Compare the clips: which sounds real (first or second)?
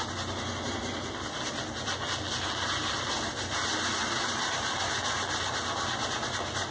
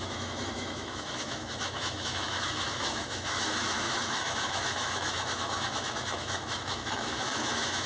first